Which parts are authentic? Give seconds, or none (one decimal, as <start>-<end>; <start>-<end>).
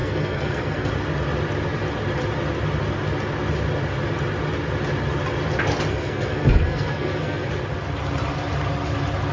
0.9-5.9; 7.5-9.3